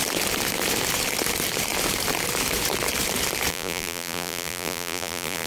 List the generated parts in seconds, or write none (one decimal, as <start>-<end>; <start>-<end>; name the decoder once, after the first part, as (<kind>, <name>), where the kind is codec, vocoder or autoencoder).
3.5-5.5 (vocoder, BigVGAN v2)